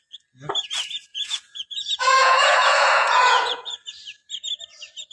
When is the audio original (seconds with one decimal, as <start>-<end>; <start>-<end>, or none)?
0.0-1.1; 3.7-5.1